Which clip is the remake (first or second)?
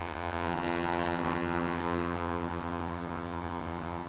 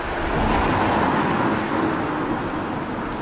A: first